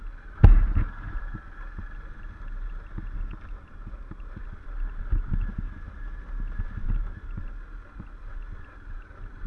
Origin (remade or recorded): recorded